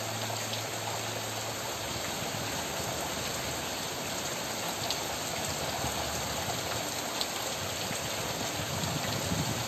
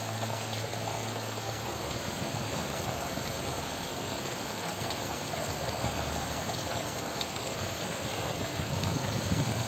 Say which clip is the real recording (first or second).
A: first